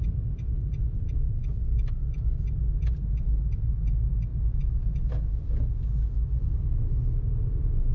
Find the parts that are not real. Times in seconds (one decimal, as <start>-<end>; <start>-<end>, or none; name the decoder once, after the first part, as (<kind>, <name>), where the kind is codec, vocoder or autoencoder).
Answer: none